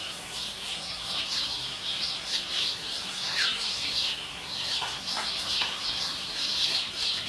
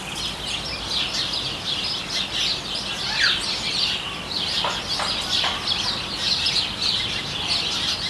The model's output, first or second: first